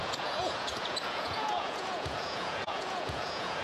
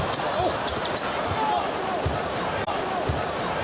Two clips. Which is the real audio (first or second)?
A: second